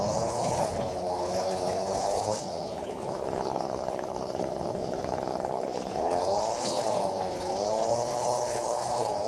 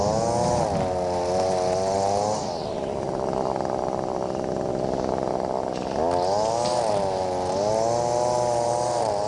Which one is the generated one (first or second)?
first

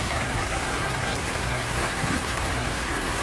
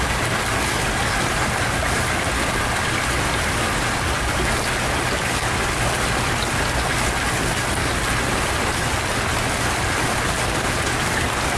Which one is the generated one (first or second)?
first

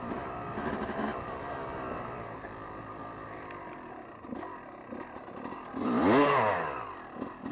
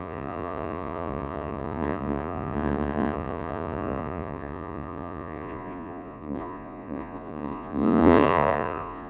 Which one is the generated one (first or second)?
second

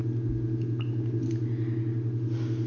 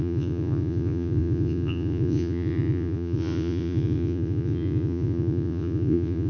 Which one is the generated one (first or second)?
second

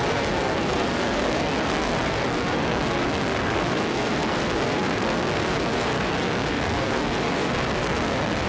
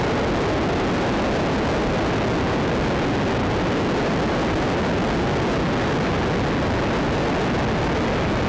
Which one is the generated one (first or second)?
first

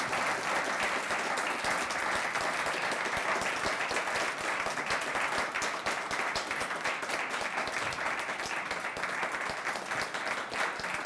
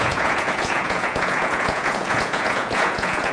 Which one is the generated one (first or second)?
second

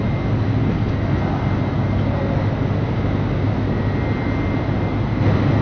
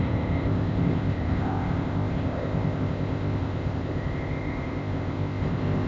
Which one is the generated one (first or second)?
second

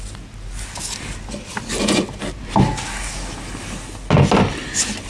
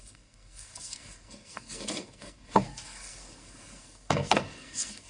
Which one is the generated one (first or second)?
second